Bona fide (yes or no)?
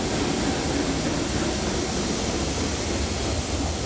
yes